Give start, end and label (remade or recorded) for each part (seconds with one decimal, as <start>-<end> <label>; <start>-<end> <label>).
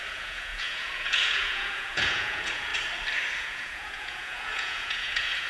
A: 0.0-2.7 remade; 2.7-3.4 recorded; 3.4-5.5 remade